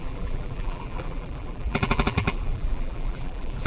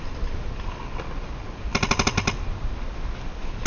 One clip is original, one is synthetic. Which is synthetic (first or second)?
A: first